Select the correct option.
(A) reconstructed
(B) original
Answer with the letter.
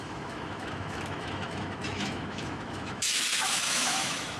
A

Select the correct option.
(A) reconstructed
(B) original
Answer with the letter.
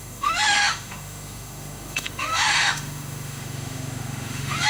A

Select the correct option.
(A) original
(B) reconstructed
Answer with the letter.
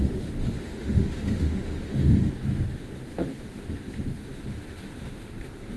B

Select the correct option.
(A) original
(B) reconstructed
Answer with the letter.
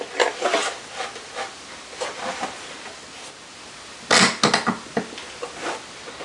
A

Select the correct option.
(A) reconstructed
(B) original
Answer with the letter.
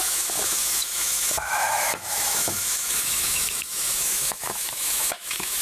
A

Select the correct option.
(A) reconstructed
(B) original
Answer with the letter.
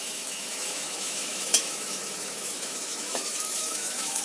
A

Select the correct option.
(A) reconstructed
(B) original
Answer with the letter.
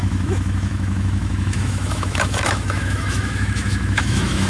A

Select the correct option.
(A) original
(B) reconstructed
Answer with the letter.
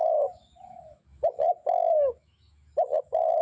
B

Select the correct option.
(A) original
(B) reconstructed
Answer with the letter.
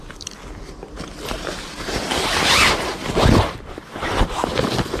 A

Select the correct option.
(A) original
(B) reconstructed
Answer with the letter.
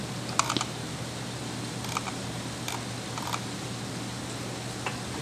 A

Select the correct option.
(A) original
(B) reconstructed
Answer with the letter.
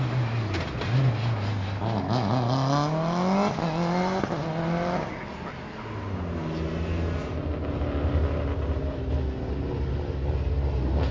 A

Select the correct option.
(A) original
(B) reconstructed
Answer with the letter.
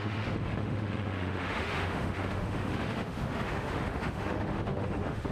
B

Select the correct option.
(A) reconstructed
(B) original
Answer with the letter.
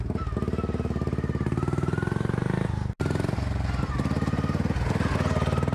B